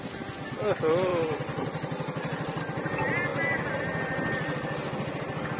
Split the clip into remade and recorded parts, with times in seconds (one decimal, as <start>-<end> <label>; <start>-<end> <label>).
0.0-5.6 recorded